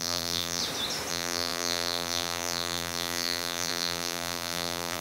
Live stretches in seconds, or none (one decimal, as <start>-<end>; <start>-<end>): 0.6-1.1